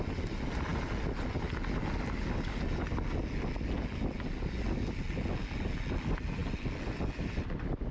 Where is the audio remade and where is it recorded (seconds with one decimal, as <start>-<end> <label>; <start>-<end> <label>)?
0.0-7.9 recorded